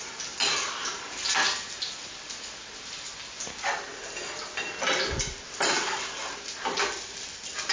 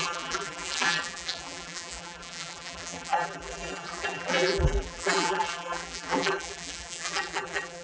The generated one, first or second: second